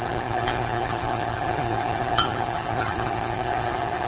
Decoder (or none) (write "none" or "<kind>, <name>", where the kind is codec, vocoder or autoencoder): vocoder, HiFi-GAN